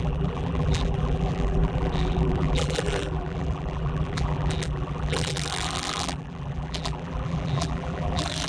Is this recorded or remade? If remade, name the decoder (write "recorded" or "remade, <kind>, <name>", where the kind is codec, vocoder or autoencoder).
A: remade, vocoder, BigVGAN v2